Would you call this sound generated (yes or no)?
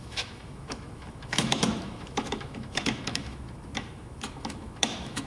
yes